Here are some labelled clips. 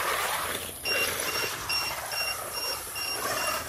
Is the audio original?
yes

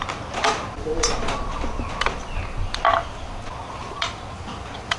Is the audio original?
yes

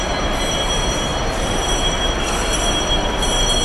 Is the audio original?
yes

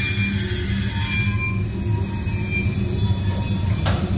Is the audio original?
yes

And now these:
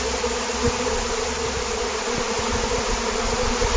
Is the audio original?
yes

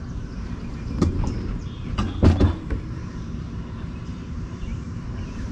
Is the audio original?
no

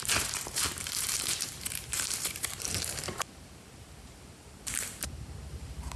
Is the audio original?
no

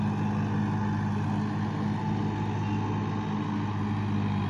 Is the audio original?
yes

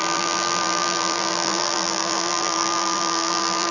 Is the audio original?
no